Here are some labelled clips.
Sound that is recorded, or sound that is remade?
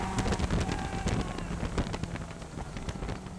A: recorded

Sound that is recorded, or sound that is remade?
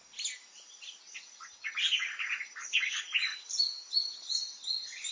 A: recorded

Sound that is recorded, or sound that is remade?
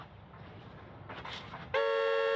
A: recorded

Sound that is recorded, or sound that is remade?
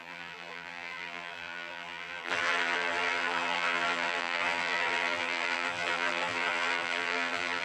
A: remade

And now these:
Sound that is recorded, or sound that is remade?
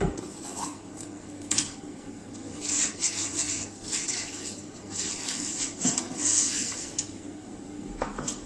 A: remade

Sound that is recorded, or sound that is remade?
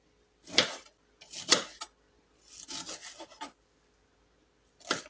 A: recorded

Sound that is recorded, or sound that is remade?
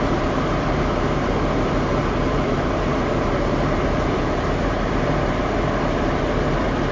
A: remade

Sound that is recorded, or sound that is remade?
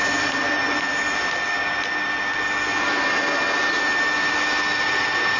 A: recorded